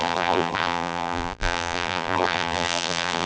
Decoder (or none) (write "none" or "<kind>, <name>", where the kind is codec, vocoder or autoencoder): vocoder, BigVGAN v2